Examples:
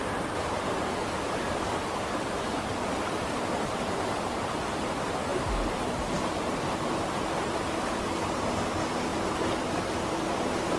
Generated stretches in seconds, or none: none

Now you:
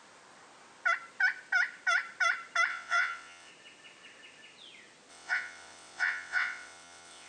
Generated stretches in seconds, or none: 2.7-3.5 (vocoder, WaveNeXt); 5.1-7.3

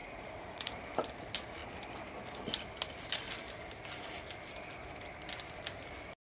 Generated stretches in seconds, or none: 0.0-0.7 (vocoder, Vocos)